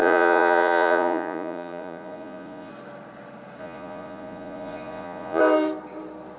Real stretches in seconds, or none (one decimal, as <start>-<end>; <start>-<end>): 2.7-3.6; 5.4-6.4